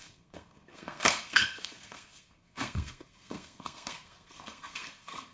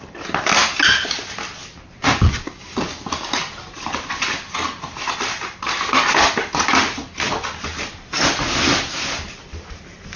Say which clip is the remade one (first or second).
first